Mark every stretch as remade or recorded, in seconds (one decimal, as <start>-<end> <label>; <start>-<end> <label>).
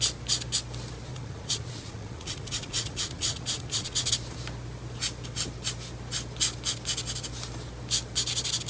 0.0-1.1 recorded; 1.1-4.1 remade; 4.1-8.7 recorded